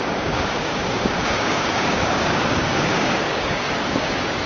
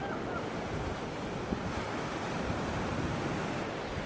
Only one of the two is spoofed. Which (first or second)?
first